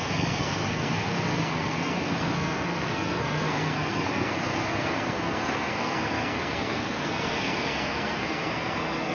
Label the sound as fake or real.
fake